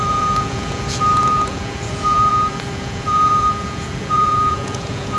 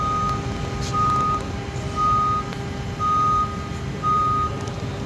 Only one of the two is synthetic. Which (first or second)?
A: first